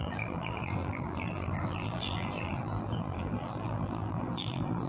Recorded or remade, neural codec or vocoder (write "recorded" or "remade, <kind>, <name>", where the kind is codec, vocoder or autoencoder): remade, vocoder, BigVGAN v2